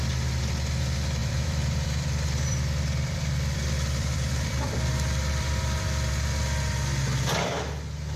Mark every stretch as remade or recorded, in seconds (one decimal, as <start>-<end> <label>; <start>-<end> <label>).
0.0-1.2 recorded; 1.2-6.1 remade; 6.1-8.2 recorded